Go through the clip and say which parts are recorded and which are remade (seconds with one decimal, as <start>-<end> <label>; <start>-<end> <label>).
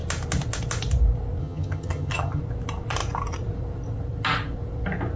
0.0-1.4 recorded; 1.4-2.4 remade; 2.4-5.2 recorded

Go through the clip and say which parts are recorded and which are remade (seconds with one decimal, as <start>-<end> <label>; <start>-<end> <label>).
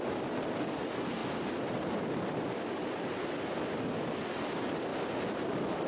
0.0-5.9 recorded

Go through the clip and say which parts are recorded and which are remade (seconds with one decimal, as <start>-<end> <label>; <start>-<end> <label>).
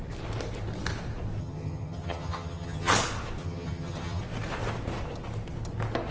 0.0-1.4 recorded; 1.4-2.9 remade; 2.9-3.4 recorded; 3.4-4.2 remade; 4.2-6.1 recorded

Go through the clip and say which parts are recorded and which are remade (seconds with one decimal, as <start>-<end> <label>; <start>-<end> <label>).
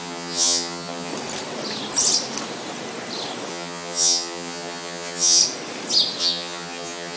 0.0-1.1 remade; 1.1-3.5 recorded; 3.5-5.4 remade; 5.4-6.2 recorded; 6.2-7.2 remade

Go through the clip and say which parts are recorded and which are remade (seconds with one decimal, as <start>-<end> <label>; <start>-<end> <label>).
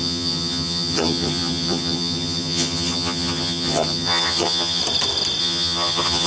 0.0-4.8 remade; 4.8-5.4 recorded; 5.4-6.3 remade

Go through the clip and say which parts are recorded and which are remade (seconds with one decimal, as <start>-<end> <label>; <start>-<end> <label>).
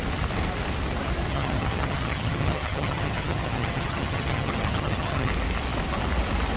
0.0-1.3 recorded; 1.3-5.3 remade; 5.3-6.6 recorded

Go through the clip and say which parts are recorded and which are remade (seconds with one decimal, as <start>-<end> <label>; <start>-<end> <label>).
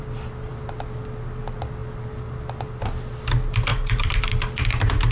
0.0-5.1 recorded